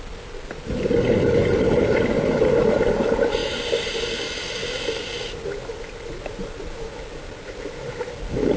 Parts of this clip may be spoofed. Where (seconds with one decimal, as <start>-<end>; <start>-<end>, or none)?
1.4-2.0; 3.4-4.0